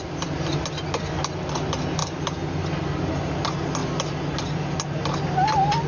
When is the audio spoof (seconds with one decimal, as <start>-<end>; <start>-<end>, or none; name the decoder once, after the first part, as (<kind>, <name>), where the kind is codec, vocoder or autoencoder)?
none